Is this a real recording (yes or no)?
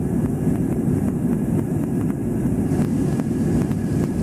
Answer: yes